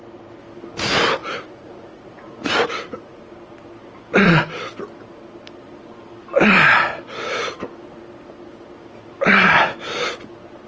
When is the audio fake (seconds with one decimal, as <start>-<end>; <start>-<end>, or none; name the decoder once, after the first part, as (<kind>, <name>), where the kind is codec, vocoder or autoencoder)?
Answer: 1.2-3.2 (vocoder, Vocos)